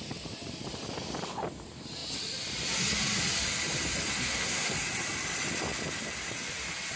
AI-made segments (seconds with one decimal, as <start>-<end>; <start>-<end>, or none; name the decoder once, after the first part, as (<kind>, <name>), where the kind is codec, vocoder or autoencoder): 4.2-4.7 (codec, SNAC)

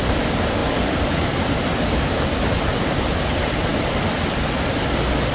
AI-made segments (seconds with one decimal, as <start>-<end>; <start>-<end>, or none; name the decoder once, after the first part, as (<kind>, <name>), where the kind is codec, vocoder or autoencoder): 0.6-2.1 (vocoder, BigVGAN v2)

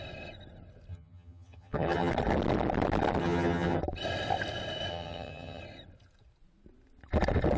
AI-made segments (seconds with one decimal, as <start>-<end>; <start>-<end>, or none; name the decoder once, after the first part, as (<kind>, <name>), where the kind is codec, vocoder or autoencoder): 0.9-2.1 (vocoder, HiFi-GAN); 3.2-3.8; 4.9-5.6